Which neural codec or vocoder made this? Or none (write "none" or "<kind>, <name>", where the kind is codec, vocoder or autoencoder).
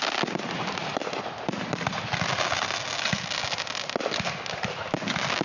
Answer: none